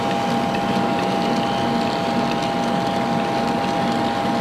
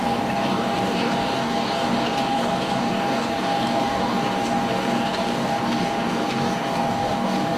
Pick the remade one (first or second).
second